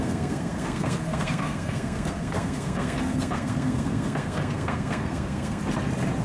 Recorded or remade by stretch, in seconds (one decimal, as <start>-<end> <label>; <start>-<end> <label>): 0.0-5.6 remade; 5.6-6.2 recorded